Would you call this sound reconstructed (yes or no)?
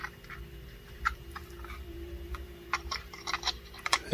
yes